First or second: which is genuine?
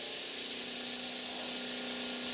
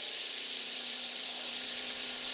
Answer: first